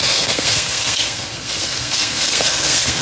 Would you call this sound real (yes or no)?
no